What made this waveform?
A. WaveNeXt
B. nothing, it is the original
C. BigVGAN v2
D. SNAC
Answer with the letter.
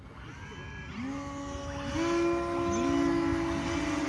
B